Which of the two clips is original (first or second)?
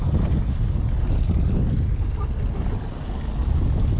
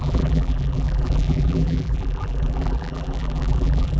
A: first